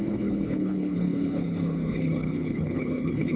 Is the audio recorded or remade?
remade